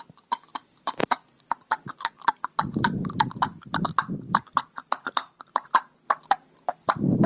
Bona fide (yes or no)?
yes